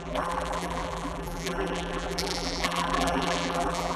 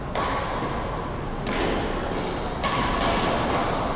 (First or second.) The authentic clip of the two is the second